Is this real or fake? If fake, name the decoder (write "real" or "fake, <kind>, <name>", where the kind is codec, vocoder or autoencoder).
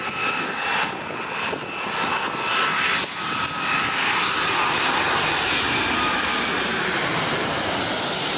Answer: real